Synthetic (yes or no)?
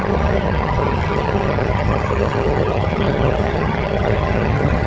yes